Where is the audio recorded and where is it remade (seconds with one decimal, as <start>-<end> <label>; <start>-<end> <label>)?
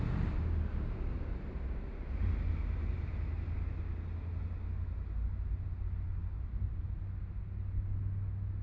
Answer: 0.0-8.6 recorded